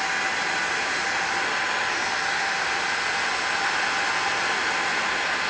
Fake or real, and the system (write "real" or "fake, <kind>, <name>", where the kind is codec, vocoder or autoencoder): real